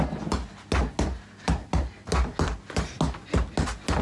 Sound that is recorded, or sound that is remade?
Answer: recorded